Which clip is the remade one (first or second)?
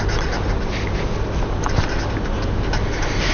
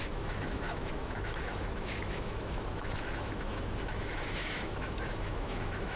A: second